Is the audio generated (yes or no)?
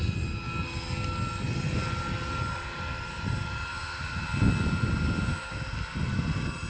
no